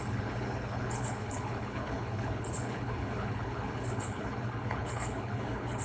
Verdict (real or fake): fake